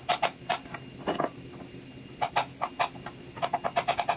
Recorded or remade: recorded